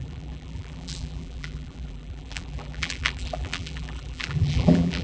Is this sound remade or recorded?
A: remade